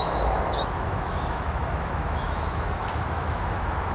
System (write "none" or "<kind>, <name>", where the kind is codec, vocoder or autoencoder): autoencoder, DAC-VAE